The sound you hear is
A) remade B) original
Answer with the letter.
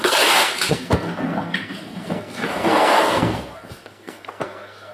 A